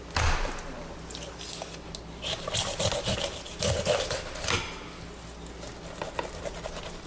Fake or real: real